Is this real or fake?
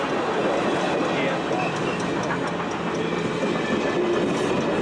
real